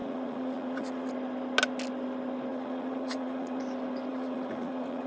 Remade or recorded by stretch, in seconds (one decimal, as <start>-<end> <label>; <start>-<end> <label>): 0.0-1.1 remade; 1.1-2.5 recorded; 2.5-3.6 remade; 3.6-4.1 recorded; 4.1-5.1 remade